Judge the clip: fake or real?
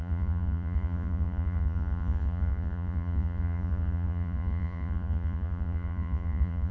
fake